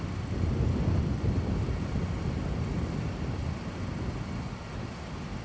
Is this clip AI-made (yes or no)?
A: no